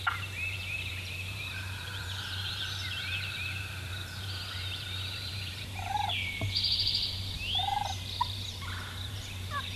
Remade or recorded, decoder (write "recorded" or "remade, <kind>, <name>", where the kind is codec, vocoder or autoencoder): remade, vocoder, BigVGAN v2